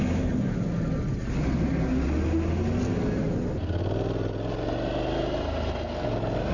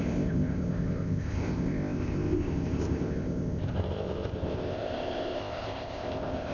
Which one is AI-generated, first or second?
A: second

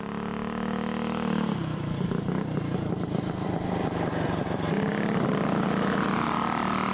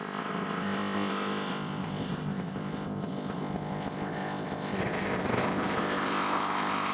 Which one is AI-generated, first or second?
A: second